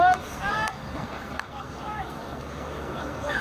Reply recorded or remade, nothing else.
remade